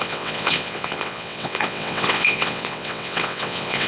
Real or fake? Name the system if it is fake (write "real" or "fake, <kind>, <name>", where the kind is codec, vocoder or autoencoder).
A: fake, vocoder, WaveNeXt